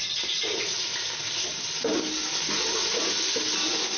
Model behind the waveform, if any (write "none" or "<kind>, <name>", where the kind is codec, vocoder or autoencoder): none